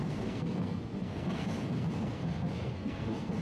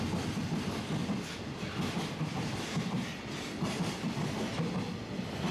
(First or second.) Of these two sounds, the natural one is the second